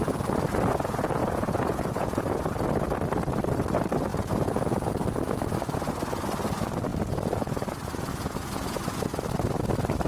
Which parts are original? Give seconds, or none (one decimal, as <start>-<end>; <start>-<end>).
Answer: 0.0-1.2; 2.2-4.1; 4.9-10.1